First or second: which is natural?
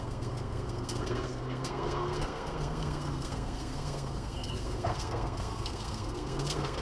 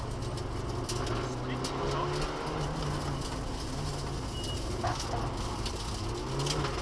second